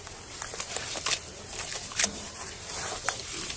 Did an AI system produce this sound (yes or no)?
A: no